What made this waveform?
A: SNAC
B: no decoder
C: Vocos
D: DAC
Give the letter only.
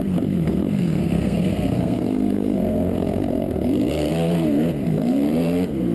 A